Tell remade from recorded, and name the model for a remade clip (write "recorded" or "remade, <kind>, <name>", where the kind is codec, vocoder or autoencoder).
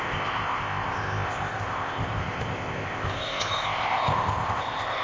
remade, codec, ZipCodec